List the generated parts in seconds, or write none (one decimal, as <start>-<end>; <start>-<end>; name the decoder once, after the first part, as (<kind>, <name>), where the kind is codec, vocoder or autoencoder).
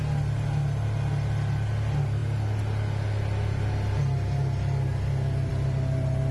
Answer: none